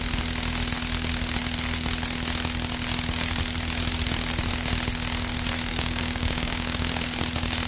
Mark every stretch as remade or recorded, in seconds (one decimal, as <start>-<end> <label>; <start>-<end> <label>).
0.0-5.7 recorded; 5.7-6.9 remade; 6.9-7.7 recorded